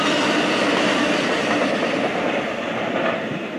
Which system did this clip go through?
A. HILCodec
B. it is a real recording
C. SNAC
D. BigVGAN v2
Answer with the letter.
B